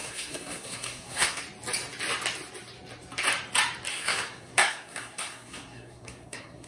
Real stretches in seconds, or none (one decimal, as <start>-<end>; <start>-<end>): 1.4-3.9